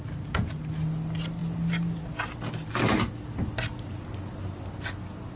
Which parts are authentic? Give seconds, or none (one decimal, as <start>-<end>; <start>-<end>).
0.0-5.4